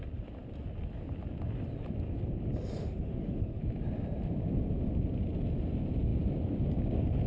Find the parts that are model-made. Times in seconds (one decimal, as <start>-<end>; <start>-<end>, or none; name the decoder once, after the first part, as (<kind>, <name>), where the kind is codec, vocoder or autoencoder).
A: 2.8-3.6 (autoencoder, DAC-VAE)